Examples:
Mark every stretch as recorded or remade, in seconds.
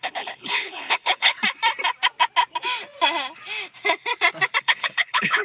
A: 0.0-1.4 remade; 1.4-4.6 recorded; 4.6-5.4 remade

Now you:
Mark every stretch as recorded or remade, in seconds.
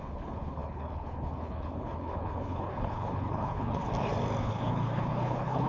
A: 0.0-3.9 remade; 3.9-4.4 recorded; 4.4-5.7 remade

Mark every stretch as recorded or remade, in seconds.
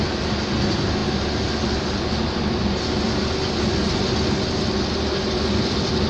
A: 0.0-6.1 recorded